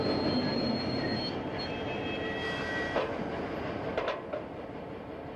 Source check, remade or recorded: recorded